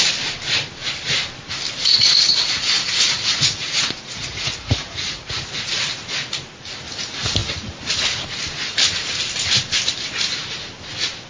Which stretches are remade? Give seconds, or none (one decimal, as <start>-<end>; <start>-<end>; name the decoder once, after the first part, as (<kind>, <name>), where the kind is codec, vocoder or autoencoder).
1.9-5.4 (vocoder, Vocos)